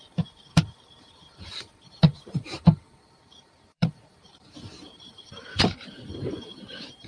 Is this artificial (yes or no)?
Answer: yes